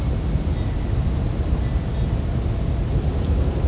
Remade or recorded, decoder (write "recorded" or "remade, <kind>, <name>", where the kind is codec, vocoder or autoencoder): recorded